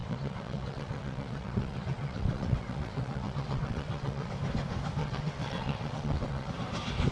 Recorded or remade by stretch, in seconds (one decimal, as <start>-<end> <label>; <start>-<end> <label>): 0.0-4.3 remade; 4.3-5.0 recorded; 5.0-6.5 remade; 6.5-7.1 recorded